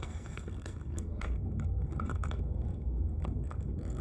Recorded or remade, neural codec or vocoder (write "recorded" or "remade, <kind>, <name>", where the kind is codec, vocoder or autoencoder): remade, codec, SNAC